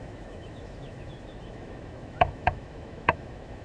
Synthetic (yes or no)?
yes